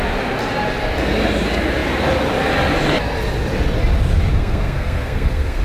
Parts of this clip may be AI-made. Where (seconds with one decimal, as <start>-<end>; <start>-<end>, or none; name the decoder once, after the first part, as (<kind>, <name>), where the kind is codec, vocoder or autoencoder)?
4.3-5.6 (codec, SNAC)